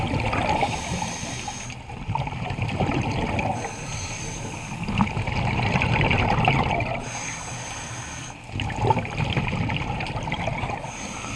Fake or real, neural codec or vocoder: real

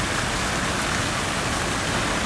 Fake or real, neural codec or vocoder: real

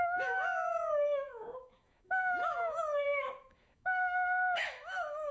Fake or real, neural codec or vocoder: fake, autoencoder, DAC-VAE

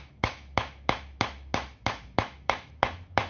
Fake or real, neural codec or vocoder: fake, autoencoder, DAC-VAE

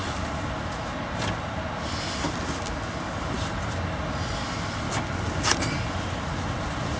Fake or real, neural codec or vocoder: real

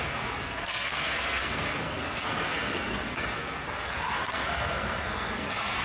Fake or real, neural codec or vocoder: fake, codec, SNAC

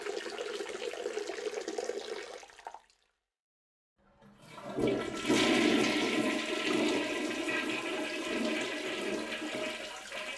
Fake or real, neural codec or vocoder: real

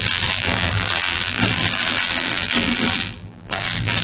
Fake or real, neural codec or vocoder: fake, vocoder, BigVGAN v2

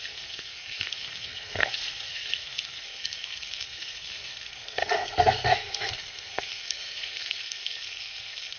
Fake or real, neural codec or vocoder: fake, codec, SNAC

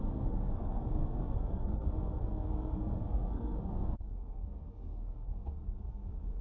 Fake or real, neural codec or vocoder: fake, codec, SNAC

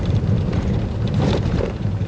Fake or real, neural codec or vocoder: fake, vocoder, BigVGAN v2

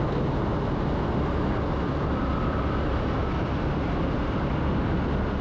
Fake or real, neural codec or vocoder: real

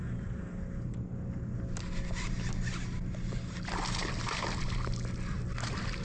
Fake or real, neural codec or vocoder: real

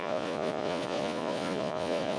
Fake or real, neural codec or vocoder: fake, vocoder, Vocos